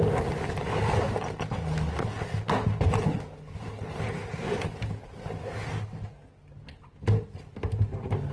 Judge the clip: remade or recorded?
recorded